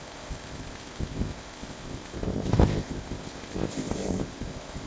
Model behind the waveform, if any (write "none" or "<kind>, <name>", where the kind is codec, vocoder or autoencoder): codec, ZipCodec